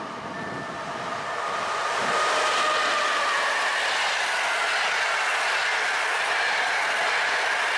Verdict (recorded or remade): recorded